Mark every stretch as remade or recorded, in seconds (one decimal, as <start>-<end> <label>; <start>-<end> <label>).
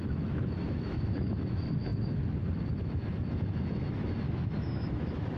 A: 0.0-5.4 remade